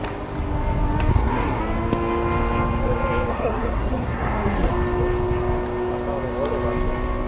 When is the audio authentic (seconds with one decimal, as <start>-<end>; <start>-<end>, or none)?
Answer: 0.0-1.1; 1.6-3.3; 4.7-7.3